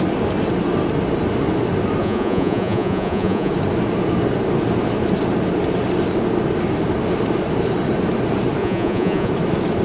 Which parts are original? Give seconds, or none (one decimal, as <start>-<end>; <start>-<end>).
0.0-2.0; 3.5-8.6; 9.3-9.8